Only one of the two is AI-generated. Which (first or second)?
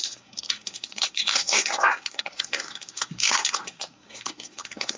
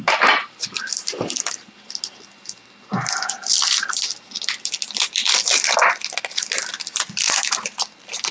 first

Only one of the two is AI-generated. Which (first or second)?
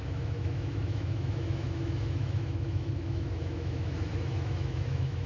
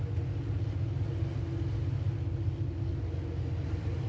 first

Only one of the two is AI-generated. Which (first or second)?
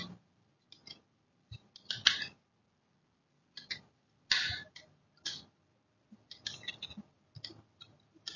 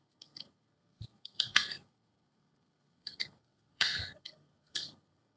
second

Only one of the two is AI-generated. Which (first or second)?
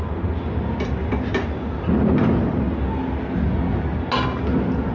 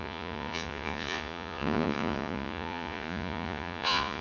second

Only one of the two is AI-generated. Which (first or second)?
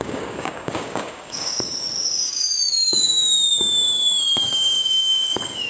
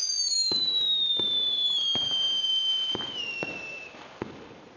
first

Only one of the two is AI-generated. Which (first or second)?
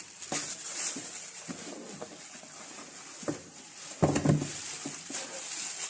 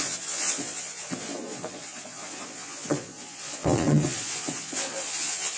second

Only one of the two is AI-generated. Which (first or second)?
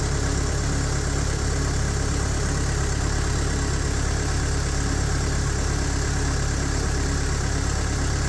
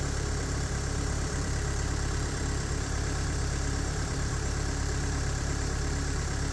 second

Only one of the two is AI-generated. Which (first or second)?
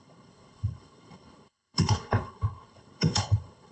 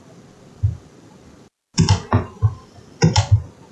first